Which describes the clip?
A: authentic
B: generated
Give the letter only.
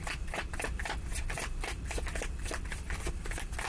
A